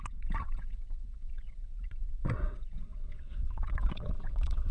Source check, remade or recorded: remade